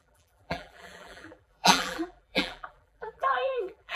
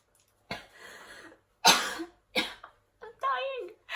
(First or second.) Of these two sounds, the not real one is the first